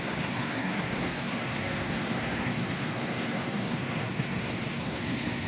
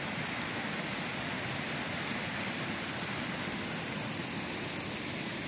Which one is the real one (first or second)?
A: second